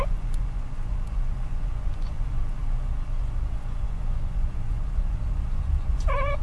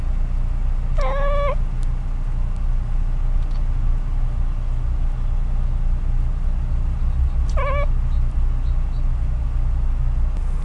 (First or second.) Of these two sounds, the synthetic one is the first